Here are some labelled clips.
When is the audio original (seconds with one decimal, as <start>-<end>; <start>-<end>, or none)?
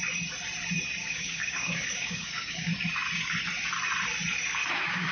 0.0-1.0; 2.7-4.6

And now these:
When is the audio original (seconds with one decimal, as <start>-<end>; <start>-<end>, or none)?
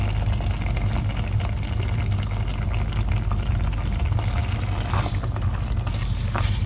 0.0-6.7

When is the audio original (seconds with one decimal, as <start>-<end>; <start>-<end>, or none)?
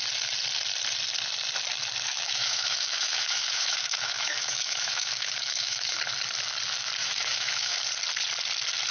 0.0-2.1; 6.0-7.0; 7.8-8.9